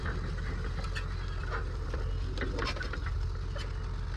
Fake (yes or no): no